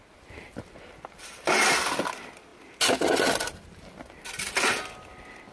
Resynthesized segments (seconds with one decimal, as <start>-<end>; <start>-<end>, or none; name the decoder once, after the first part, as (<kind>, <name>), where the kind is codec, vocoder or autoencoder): none